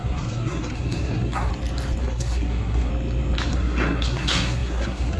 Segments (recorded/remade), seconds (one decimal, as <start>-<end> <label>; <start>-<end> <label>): 0.0-1.5 remade; 1.5-2.0 recorded; 2.0-2.9 remade; 2.9-3.5 recorded; 3.5-5.2 remade